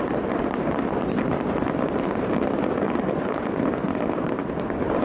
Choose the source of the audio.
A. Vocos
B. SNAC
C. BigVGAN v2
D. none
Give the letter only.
C